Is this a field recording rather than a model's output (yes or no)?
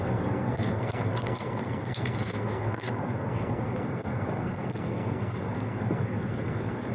no